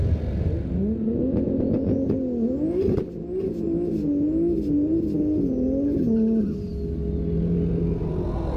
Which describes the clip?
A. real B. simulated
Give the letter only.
A